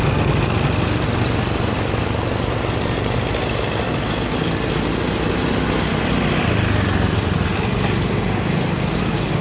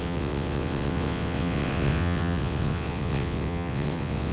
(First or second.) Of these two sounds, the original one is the first